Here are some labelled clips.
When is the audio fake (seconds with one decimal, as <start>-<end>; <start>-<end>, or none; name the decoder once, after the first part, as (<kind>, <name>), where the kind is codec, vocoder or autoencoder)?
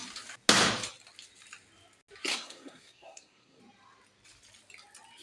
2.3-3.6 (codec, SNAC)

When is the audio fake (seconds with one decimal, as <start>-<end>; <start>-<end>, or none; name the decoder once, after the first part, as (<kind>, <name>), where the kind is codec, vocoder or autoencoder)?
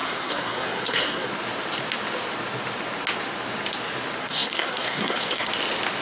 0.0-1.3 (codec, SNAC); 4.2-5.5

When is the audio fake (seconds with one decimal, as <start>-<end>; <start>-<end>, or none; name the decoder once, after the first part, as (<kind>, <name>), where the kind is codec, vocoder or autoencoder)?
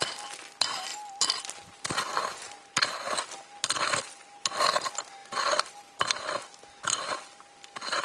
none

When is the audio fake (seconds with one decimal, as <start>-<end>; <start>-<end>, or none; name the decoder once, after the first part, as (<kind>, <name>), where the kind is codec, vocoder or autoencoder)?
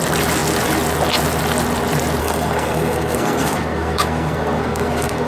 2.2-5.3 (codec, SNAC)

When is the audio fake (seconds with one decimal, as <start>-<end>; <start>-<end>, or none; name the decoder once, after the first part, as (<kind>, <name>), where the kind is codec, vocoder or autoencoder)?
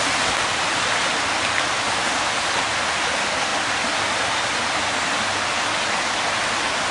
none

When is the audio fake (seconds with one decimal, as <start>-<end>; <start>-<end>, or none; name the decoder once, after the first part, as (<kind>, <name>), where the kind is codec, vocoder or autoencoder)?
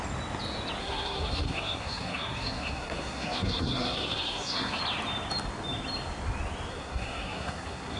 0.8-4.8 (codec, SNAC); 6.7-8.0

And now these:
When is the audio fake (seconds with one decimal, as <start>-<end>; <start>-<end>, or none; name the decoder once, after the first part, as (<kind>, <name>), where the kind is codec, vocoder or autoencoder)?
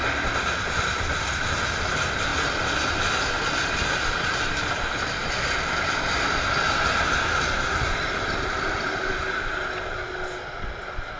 none